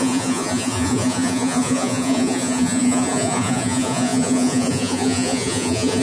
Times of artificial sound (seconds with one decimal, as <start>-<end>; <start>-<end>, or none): 0.0-6.0